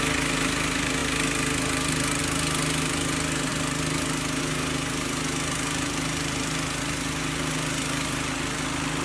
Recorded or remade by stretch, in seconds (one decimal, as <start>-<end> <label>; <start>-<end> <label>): 0.0-9.0 recorded

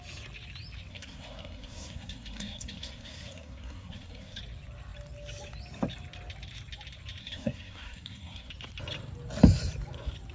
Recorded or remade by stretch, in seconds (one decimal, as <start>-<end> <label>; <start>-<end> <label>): 0.0-0.9 recorded; 0.9-4.4 remade; 4.4-7.2 recorded; 7.2-8.5 remade; 8.5-10.3 recorded